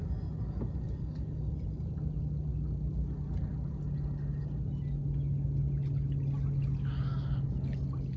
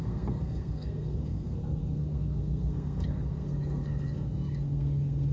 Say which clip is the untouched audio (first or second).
first